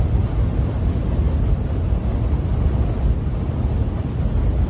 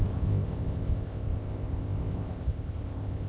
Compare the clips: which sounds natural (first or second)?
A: first